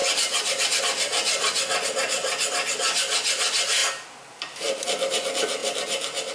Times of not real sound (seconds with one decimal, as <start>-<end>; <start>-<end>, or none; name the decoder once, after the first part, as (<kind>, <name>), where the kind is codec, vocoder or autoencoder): none

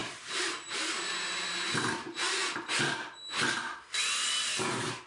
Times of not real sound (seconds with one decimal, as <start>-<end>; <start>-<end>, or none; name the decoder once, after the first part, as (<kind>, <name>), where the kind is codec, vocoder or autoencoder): 0.0-0.9 (vocoder, BigVGAN v2); 4.5-5.1